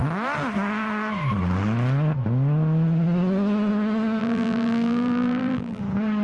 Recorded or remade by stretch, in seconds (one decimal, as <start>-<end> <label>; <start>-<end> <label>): 0.0-4.2 recorded; 4.2-5.8 remade; 5.8-6.2 recorded